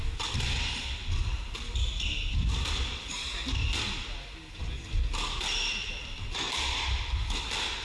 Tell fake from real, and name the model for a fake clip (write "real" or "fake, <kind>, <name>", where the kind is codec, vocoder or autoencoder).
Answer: real